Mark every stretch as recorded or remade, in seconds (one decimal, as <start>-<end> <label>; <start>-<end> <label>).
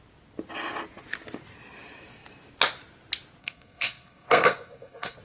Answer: 0.0-3.4 recorded; 3.4-5.2 remade